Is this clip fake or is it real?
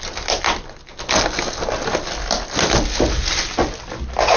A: real